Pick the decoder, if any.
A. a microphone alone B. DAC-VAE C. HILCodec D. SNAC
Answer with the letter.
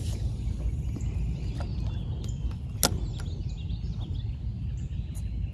A